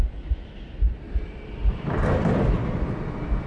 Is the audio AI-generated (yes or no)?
yes